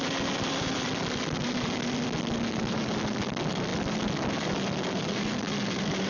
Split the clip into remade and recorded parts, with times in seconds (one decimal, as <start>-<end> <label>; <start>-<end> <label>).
0.0-6.1 remade

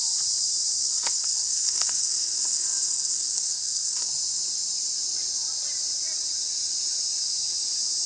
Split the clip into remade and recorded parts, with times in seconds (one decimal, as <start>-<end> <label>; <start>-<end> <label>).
0.0-0.8 recorded; 0.8-4.1 remade; 4.1-8.1 recorded

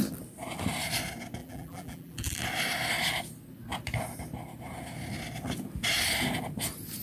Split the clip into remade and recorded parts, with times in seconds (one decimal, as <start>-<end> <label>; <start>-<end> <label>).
0.0-1.4 recorded; 1.4-2.4 remade; 2.4-7.0 recorded

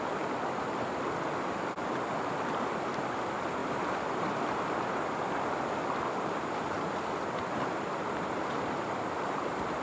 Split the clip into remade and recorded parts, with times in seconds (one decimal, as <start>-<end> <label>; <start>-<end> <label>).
0.0-9.8 recorded

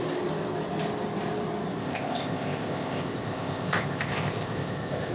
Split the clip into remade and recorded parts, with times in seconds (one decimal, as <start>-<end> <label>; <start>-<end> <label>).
0.0-1.8 recorded; 1.8-5.1 remade

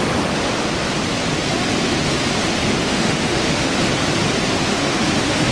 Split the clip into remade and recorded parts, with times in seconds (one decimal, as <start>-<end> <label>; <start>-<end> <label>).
0.0-2.8 recorded; 2.8-3.7 remade; 3.7-4.7 recorded; 4.7-5.5 remade

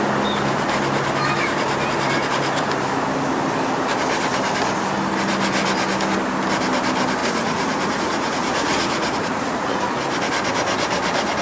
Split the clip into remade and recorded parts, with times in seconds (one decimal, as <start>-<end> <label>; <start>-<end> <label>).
0.0-7.2 recorded; 7.2-9.8 remade; 9.8-11.4 recorded

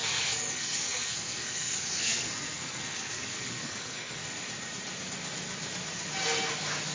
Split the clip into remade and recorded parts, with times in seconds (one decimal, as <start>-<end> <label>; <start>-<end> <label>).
0.0-4.2 remade; 4.2-6.9 recorded